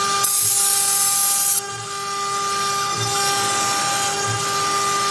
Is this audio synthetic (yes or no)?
no